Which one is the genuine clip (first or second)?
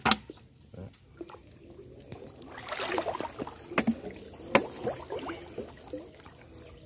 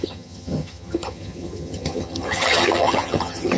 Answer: first